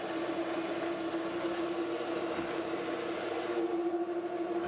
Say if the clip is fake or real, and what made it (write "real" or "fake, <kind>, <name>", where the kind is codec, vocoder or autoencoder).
real